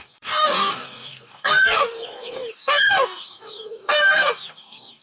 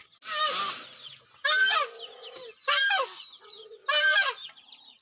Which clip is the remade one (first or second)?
first